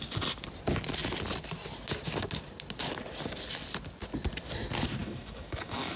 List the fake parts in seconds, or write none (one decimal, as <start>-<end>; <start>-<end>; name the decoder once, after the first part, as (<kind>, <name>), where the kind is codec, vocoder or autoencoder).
5.0-6.0 (codec, DAC)